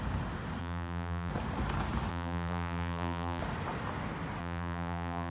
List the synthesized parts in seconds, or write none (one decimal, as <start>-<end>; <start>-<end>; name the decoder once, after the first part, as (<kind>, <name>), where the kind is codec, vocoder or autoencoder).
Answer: 0.6-1.3 (vocoder, BigVGAN v2); 2.1-3.4; 4.4-5.3